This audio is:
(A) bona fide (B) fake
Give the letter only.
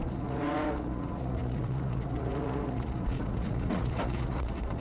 B